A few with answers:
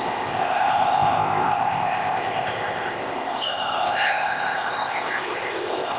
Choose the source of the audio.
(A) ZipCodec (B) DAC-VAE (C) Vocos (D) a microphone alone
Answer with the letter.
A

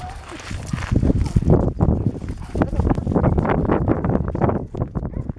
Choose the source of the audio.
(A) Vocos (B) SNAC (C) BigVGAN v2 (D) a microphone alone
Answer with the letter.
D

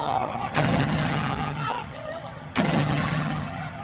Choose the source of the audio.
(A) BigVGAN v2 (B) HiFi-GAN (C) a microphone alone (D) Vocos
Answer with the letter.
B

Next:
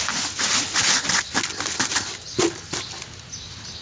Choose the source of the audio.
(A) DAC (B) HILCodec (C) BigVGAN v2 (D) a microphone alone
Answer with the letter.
D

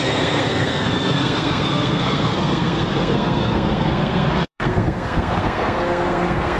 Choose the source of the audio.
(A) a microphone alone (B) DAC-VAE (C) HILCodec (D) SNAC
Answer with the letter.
D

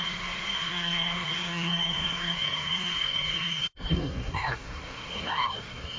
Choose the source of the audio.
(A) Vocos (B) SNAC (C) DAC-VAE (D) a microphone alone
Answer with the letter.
B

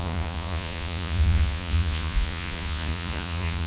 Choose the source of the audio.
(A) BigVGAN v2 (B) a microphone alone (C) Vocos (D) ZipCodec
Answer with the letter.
C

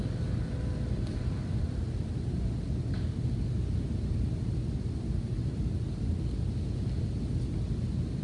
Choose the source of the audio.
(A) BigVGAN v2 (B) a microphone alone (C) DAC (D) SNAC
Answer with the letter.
B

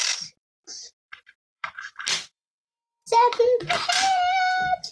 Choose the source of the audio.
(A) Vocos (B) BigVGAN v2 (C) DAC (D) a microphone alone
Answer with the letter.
B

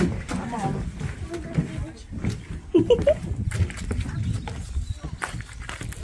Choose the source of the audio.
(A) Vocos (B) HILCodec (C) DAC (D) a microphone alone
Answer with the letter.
D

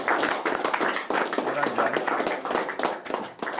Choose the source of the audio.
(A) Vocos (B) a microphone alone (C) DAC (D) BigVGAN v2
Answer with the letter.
B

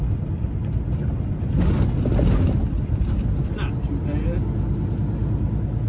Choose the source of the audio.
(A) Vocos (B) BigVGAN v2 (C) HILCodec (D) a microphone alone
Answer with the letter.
D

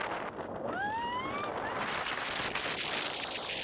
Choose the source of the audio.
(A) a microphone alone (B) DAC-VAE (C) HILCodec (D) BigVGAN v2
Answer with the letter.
A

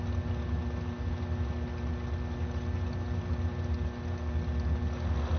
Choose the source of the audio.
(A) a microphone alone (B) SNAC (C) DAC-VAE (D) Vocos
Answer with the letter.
A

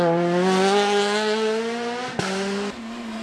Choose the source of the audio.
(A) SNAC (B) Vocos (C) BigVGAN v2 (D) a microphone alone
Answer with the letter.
D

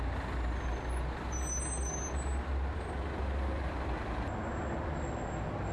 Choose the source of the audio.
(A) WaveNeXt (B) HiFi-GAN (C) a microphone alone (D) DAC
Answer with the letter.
C